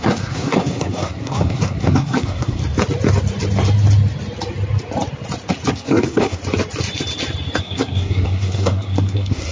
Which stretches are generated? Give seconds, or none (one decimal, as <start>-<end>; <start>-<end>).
0.0-2.6; 5.7-6.4; 7.6-9.5